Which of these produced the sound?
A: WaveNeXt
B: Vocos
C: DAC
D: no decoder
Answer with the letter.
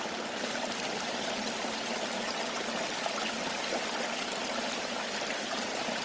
D